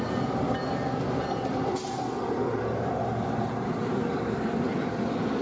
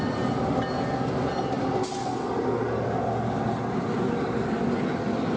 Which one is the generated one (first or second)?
first